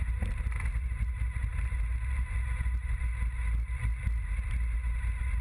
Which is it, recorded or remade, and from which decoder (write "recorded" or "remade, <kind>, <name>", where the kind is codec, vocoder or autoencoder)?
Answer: recorded